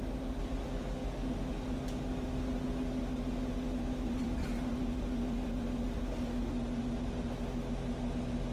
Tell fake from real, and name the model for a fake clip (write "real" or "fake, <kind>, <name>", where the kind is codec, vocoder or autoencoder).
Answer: real